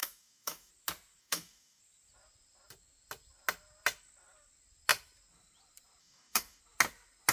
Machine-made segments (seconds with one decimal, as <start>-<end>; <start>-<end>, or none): 0.0-0.7; 1.2-1.8; 6.0-6.6